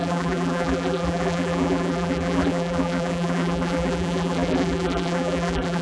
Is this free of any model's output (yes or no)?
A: no